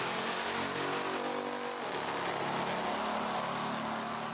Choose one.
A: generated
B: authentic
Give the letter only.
B